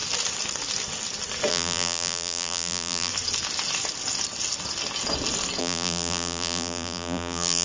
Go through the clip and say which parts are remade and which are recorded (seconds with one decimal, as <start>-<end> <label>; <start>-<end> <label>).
0.0-1.5 recorded; 1.5-3.1 remade; 3.1-5.6 recorded; 5.6-7.6 remade